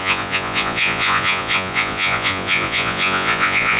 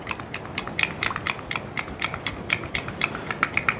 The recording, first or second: second